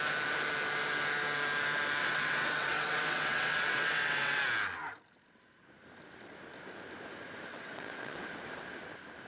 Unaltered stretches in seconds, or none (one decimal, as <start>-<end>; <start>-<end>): 0.0-2.0; 4.4-7.5; 8.2-9.3